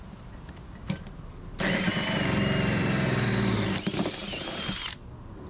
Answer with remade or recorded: remade